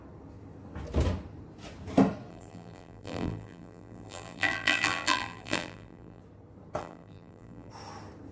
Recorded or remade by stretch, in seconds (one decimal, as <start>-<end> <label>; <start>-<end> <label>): 0.0-2.3 recorded; 2.3-6.2 remade; 6.2-6.8 recorded; 6.8-7.7 remade; 7.7-8.3 recorded